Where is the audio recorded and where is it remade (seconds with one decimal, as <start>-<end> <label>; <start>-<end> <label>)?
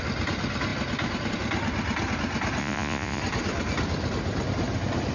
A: 0.0-2.6 recorded; 2.6-3.2 remade; 3.2-5.1 recorded